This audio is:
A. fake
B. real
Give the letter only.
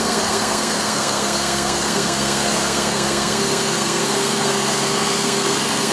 A